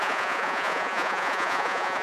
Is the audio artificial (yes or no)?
yes